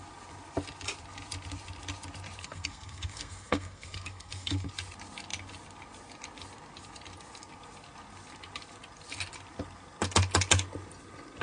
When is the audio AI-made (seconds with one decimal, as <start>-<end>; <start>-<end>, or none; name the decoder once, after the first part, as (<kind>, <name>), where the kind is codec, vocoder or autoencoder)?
2.4-4.7 (codec, SNAC)